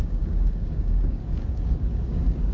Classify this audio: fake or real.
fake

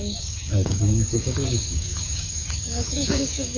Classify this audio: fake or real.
fake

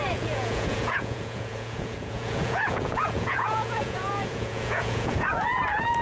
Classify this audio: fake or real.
fake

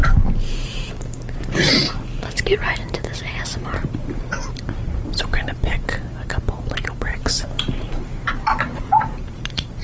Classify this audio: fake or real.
fake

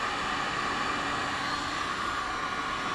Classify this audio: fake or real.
real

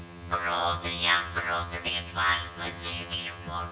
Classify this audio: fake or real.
fake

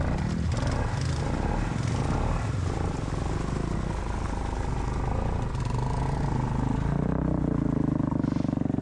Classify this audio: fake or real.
real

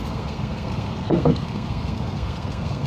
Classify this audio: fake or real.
fake